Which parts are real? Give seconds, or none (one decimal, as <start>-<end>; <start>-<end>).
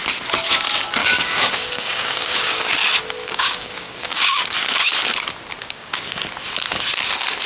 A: 0.0-1.0; 2.6-3.2; 4.4-5.6; 6.2-7.5